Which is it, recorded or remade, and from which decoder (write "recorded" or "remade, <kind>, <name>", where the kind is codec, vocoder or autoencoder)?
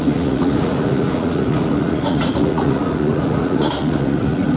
remade, vocoder, Vocos